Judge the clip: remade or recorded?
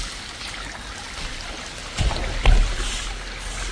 recorded